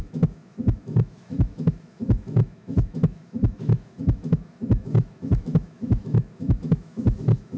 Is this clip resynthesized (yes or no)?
yes